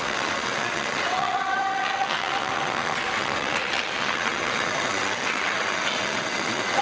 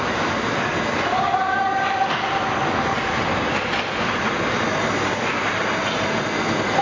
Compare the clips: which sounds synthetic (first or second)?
first